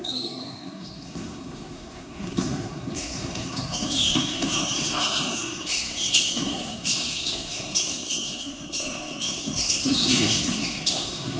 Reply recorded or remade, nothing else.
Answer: remade